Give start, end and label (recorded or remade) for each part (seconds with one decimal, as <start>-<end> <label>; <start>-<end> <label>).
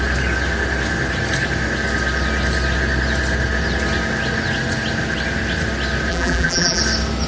0.0-6.1 recorded; 6.1-6.8 remade; 6.8-7.3 recorded